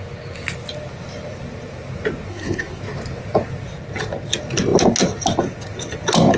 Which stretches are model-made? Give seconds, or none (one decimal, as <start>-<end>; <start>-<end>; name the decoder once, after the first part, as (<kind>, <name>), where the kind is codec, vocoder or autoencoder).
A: 2.3-2.8 (codec, SNAC)